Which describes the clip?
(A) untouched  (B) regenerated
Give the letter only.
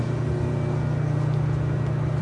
A